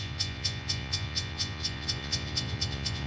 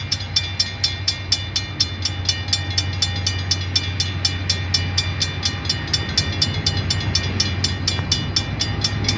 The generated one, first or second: first